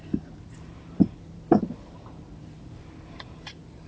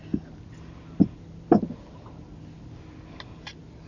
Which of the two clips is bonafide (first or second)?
second